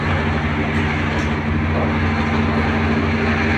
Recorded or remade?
recorded